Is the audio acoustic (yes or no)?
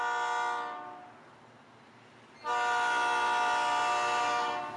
yes